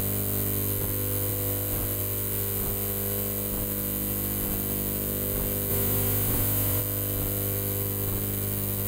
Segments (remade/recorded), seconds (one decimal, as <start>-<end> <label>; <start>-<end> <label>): 0.0-5.7 recorded; 5.7-6.8 remade; 6.8-8.9 recorded